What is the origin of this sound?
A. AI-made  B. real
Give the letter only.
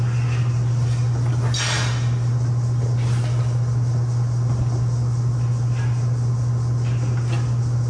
B